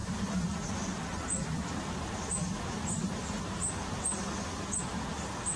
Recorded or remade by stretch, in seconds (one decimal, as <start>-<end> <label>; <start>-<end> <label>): 0.0-5.6 remade

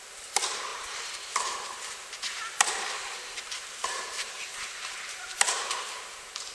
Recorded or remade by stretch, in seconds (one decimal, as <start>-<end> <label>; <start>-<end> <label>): 0.0-0.7 recorded; 0.7-1.3 remade; 1.3-3.0 recorded; 3.0-6.1 remade; 6.1-6.5 recorded

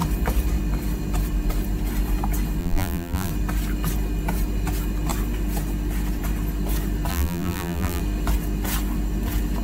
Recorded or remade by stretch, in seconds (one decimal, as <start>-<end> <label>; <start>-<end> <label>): 0.0-2.6 recorded; 2.6-3.3 remade; 3.3-7.1 recorded; 7.1-8.0 remade; 8.0-9.6 recorded

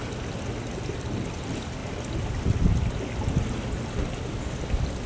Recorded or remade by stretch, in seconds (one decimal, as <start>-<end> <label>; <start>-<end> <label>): 0.0-5.1 recorded

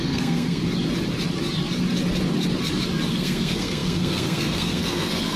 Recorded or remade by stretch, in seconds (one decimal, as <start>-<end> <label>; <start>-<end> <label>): 0.0-0.6 remade; 0.6-3.1 recorded; 3.1-5.4 remade

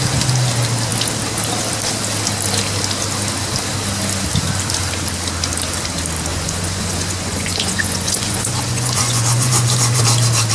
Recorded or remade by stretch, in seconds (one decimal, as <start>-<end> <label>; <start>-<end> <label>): 0.0-6.3 recorded; 6.3-10.0 remade; 10.0-10.5 recorded

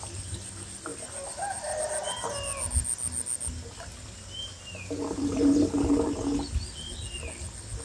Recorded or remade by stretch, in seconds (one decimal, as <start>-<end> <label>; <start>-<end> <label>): 0.0-7.8 recorded